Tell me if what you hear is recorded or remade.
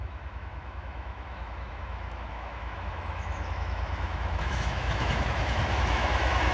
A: remade